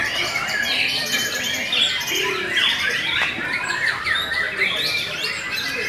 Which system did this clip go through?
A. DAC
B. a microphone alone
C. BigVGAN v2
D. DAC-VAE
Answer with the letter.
B